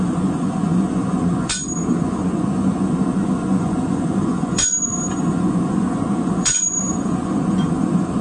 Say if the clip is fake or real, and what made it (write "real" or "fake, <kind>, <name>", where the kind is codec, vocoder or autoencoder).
fake, vocoder, Vocos